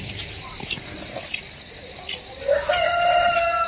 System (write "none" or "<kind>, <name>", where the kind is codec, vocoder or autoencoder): none